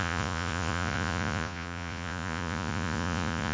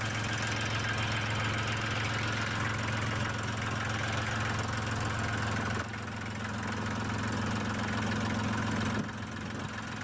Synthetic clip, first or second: first